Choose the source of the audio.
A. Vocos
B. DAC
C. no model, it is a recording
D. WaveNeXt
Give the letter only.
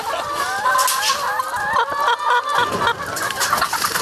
C